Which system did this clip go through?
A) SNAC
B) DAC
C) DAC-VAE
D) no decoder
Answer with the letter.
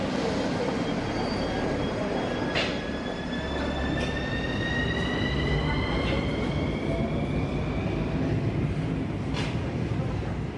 D